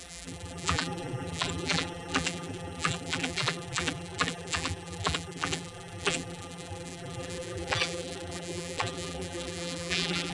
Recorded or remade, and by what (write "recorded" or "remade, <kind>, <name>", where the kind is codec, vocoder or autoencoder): remade, vocoder, BigVGAN v2